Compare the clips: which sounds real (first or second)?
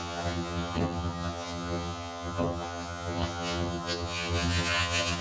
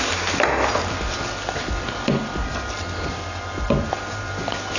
second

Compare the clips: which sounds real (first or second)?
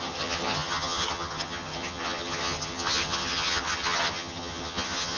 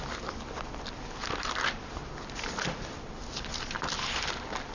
second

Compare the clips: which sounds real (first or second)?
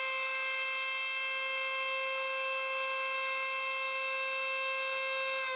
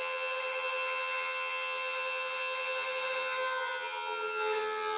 first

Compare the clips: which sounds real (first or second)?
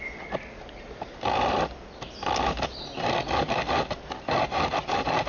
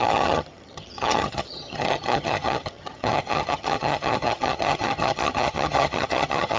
first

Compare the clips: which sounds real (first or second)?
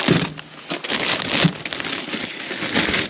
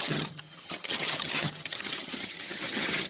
first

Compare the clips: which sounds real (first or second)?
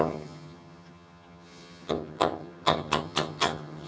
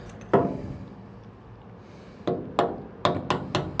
second